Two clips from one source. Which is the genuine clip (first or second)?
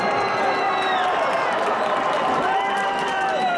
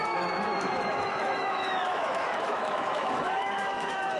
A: first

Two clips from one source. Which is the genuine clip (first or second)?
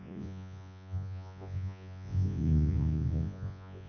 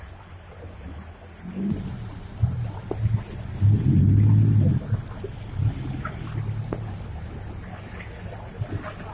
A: second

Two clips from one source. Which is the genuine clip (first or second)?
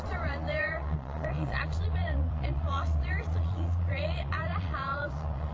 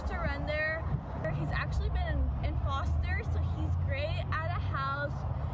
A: second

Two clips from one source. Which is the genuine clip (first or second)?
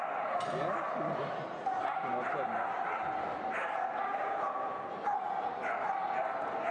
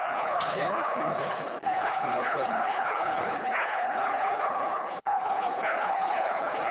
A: first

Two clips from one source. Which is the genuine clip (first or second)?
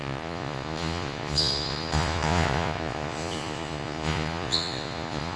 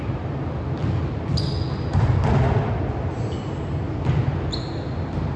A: second